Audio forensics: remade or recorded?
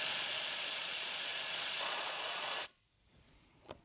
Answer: remade